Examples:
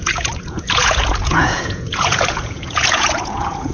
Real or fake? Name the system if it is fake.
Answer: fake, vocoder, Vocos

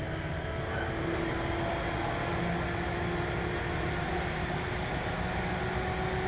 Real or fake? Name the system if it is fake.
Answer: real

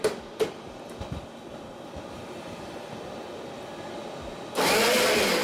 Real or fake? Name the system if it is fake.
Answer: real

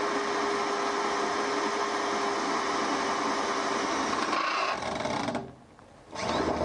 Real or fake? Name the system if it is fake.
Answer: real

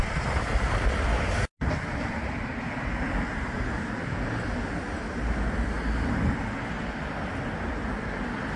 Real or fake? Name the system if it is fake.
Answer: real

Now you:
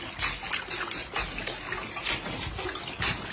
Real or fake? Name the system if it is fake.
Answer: real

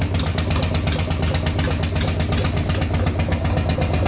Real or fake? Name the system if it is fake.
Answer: real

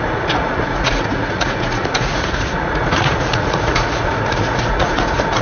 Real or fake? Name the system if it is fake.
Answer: fake, vocoder, Vocos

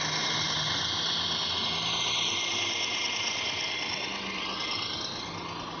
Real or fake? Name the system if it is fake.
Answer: real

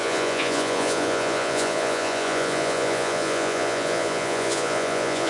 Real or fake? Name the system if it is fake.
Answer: fake, vocoder, Vocos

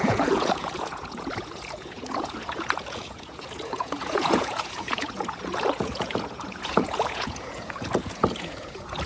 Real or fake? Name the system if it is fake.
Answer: fake, vocoder, Vocos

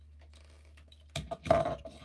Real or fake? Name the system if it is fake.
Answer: real